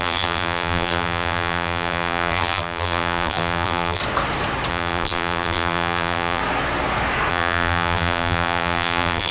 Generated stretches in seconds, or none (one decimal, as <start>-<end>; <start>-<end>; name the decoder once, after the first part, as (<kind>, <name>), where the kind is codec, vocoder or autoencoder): 0.0-4.0 (vocoder, BigVGAN v2); 4.7-6.4; 7.3-9.3